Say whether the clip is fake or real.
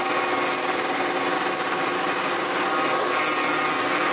real